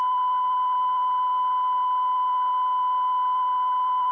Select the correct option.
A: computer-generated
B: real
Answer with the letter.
B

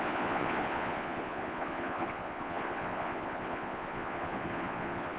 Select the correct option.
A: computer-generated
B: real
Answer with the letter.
A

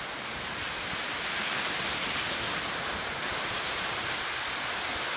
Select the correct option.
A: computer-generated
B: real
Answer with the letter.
B